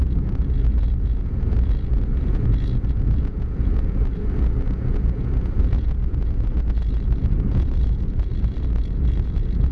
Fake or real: fake